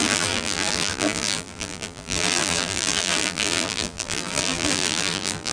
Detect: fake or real fake